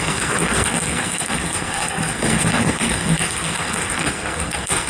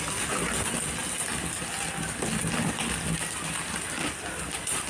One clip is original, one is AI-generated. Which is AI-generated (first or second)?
first